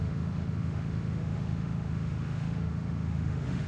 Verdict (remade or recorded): remade